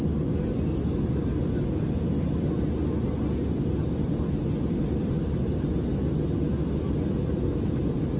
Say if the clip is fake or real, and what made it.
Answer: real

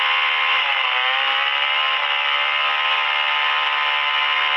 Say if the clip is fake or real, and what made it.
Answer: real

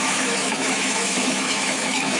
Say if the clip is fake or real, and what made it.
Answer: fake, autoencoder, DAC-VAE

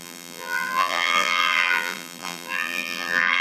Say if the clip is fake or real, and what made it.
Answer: fake, vocoder, BigVGAN v2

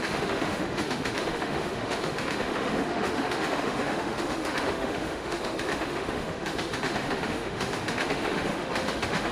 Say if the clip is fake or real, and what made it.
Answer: fake, autoencoder, DAC-VAE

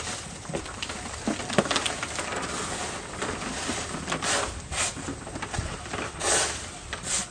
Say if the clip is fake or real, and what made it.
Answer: real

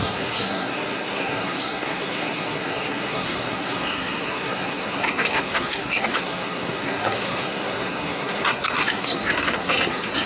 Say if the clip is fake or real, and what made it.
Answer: fake, codec, SNAC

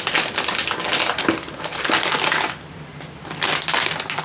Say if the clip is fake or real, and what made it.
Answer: real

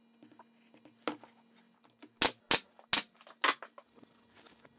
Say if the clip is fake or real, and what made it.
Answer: real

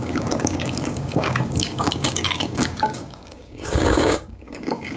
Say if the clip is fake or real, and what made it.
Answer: fake, codec, DAC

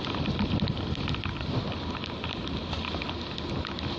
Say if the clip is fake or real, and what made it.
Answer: real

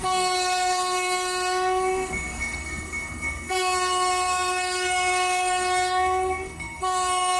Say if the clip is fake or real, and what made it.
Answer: fake, codec, SNAC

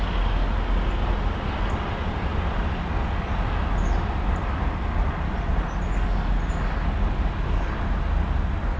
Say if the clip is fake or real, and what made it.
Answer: real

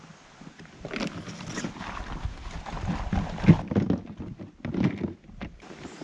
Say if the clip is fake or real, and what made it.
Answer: real